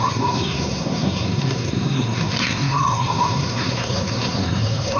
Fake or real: fake